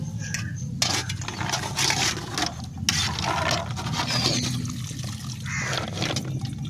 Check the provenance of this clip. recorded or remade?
recorded